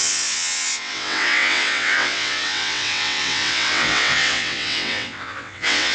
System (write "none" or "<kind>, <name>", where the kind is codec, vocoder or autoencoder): vocoder, WaveNeXt